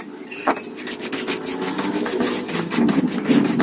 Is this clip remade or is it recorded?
recorded